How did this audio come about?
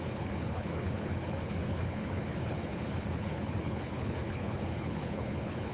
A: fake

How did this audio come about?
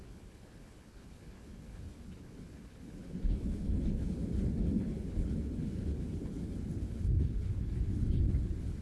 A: fake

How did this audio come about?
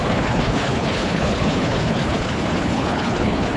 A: fake